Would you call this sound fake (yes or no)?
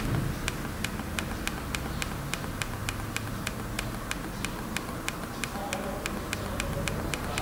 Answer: no